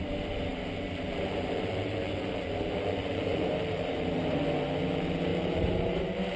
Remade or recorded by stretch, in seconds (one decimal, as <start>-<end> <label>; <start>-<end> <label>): 0.0-3.3 recorded; 3.3-4.4 remade; 4.4-5.3 recorded; 5.3-6.4 remade

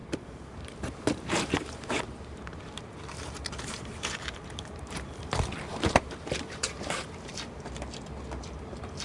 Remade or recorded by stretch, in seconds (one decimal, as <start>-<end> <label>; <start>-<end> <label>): 0.0-5.1 remade; 5.1-5.7 recorded; 5.7-7.3 remade; 7.3-9.0 recorded